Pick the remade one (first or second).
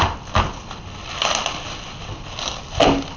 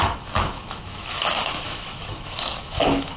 second